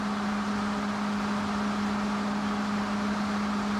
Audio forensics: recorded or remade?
recorded